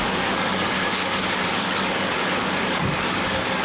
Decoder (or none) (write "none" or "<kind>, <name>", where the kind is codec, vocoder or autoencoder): codec, DAC